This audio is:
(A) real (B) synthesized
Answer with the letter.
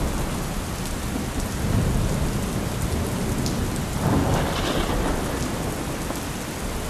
A